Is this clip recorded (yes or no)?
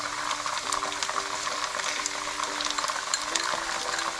yes